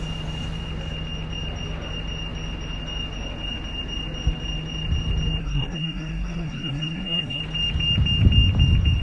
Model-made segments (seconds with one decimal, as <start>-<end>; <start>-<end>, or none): 5.4-7.4